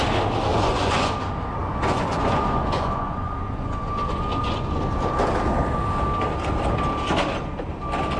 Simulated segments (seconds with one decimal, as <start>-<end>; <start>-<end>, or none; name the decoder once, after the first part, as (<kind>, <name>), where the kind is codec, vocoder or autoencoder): 0.5-1.1 (vocoder, Vocos); 1.6-4.8